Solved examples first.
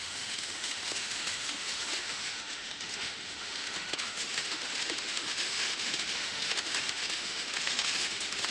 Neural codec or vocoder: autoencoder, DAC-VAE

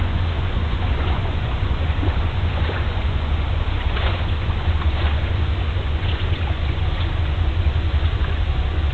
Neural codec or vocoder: vocoder, Vocos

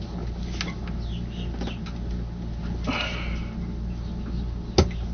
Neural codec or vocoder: none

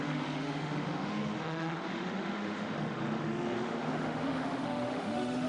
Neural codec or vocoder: autoencoder, DAC-VAE